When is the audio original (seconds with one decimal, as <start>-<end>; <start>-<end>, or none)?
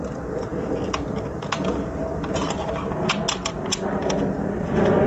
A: 0.0-5.1